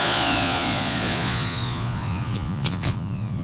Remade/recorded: remade